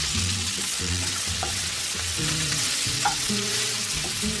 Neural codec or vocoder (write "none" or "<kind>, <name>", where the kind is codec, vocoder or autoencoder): vocoder, WaveNeXt